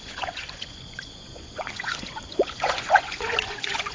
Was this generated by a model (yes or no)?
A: yes